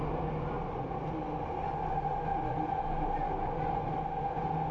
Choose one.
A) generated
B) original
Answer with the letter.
B